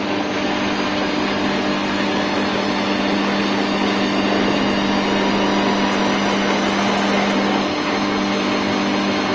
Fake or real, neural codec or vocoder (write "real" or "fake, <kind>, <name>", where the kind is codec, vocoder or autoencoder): real